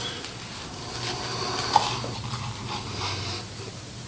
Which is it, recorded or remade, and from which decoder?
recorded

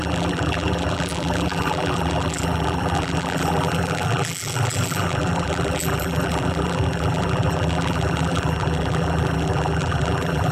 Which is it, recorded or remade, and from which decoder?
remade, vocoder, BigVGAN v2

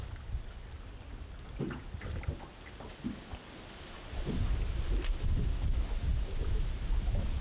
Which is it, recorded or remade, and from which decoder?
recorded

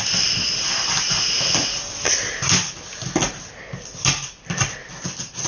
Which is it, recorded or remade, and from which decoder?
recorded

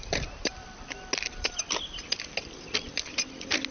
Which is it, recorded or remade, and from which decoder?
recorded